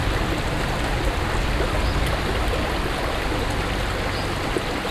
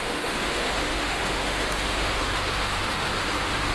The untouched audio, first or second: first